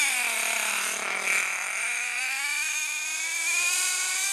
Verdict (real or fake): fake